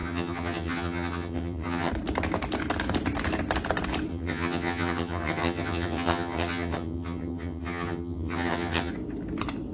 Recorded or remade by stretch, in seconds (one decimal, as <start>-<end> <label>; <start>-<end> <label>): 0.0-1.9 remade; 1.9-4.1 recorded; 4.1-8.9 remade; 8.9-9.7 recorded